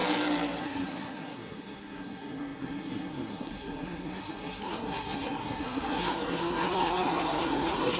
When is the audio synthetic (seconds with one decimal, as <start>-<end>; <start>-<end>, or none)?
0.6-8.0